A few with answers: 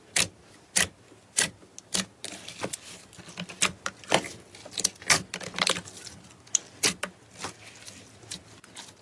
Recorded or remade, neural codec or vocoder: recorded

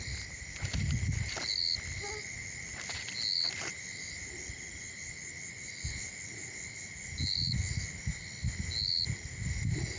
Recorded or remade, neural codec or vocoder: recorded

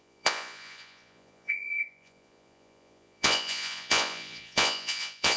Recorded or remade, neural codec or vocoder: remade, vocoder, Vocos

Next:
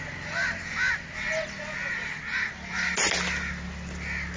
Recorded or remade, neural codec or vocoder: recorded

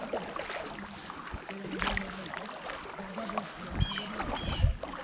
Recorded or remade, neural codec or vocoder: recorded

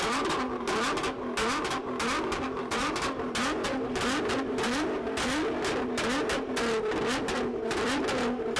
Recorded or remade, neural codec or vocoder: recorded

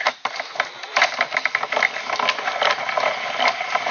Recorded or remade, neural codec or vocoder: recorded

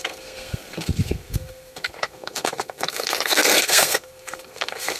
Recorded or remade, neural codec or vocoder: remade, codec, SNAC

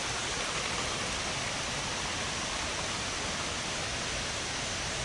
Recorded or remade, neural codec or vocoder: recorded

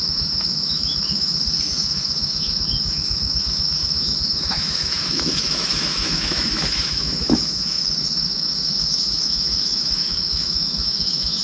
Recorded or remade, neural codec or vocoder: remade, autoencoder, DAC-VAE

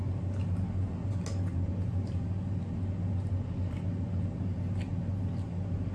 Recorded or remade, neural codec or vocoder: recorded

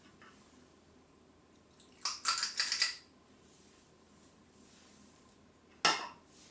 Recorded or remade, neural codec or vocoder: recorded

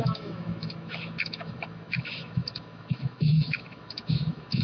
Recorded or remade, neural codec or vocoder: remade, autoencoder, DAC-VAE